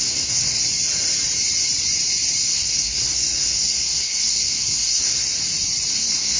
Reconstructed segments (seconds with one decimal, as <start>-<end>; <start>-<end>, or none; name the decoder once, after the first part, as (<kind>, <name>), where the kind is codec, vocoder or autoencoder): 0.0-0.6 (codec, SNAC); 2.4-5.3; 5.9-6.4